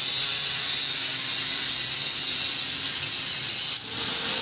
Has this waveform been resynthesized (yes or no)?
no